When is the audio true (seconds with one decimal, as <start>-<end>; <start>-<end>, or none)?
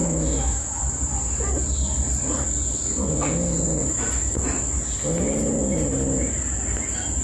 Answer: 0.8-7.2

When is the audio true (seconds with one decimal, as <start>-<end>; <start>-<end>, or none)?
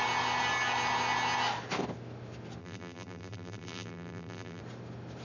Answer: 0.0-2.6; 4.6-5.2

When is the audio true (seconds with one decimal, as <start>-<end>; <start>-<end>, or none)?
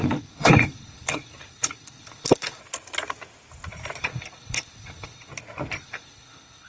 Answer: 2.6-4.0; 5.3-5.8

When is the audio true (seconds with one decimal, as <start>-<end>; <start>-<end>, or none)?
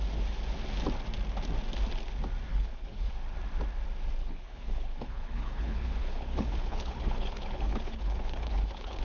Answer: 0.0-2.5; 3.1-4.2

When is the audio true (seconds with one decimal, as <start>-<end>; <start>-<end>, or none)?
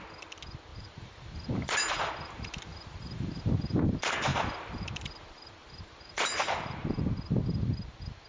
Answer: 0.0-0.7; 2.1-2.7; 3.4-4.3; 7.1-8.3